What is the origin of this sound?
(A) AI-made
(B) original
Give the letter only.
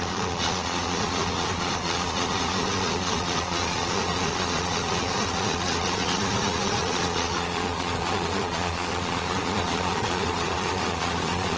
A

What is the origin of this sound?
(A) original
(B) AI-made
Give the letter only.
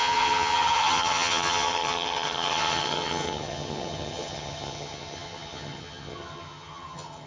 B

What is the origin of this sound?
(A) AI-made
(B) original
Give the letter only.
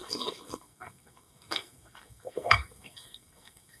A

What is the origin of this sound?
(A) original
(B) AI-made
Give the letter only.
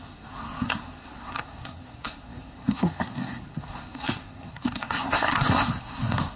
B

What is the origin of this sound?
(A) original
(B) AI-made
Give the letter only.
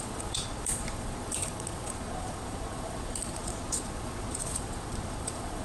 B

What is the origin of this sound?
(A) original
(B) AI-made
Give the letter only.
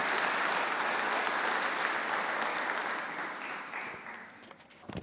A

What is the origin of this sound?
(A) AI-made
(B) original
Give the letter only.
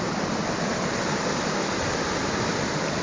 B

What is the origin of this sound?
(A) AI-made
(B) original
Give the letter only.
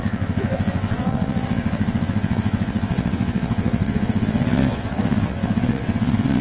A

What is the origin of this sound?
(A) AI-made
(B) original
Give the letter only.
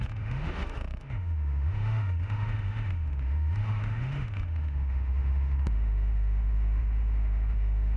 A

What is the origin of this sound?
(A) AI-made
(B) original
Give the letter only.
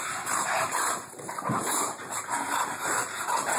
A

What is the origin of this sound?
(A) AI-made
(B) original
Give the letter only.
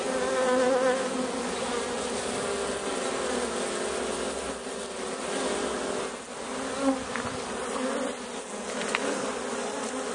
B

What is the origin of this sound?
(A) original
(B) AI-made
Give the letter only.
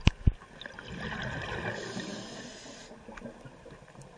A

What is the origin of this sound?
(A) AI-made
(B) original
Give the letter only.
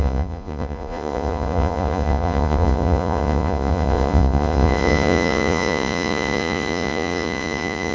A